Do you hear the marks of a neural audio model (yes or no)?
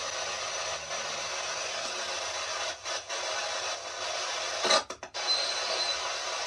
no